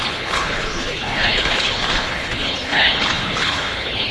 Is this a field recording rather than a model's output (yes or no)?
no